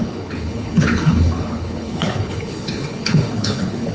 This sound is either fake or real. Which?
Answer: fake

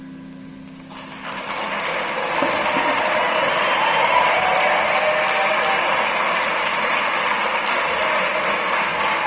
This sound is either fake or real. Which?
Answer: real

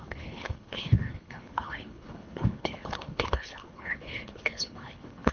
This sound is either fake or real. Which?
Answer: fake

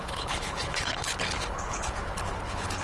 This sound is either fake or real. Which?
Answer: fake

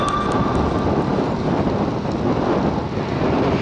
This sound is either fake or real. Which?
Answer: real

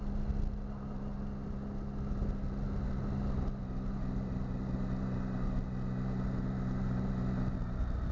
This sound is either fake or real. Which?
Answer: real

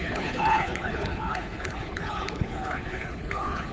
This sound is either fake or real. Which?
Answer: fake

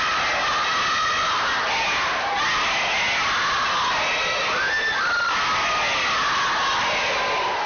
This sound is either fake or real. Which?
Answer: real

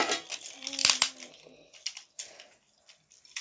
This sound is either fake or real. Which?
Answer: real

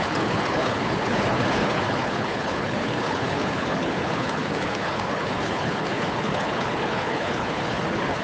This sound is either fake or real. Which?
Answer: fake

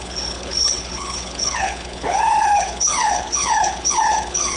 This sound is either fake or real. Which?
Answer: fake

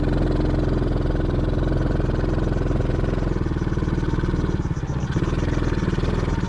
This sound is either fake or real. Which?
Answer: real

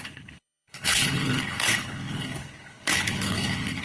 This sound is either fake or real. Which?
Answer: fake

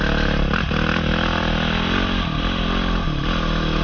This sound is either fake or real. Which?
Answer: real